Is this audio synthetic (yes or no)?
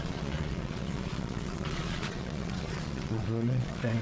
yes